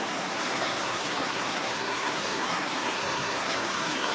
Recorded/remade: remade